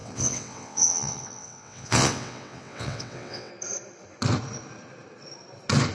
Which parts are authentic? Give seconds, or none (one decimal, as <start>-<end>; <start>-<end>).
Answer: 3.5-5.9